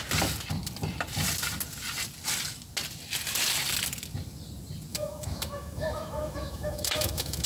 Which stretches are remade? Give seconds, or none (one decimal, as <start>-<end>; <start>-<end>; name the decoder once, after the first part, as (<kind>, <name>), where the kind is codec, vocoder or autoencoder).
4.9-7.5 (autoencoder, DAC-VAE)